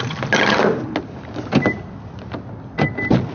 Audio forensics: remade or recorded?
recorded